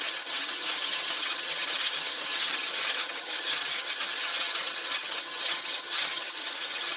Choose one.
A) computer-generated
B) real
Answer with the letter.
A